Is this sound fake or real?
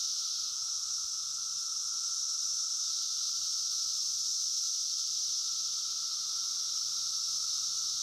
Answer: real